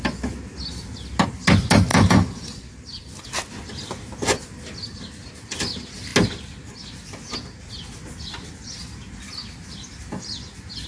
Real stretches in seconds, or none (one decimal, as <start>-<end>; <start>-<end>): 0.0-1.9; 3.2-10.9